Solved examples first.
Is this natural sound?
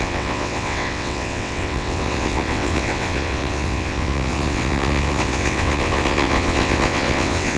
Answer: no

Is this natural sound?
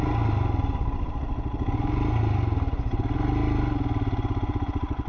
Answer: yes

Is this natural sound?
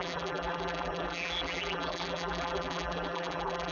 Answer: no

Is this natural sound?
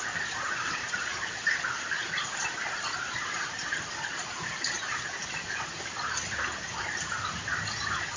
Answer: yes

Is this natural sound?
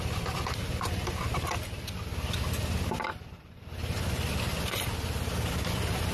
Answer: yes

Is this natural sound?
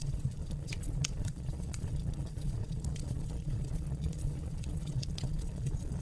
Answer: no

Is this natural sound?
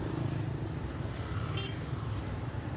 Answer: yes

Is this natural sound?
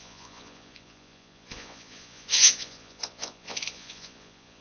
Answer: no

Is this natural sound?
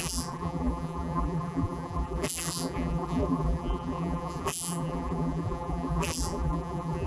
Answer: no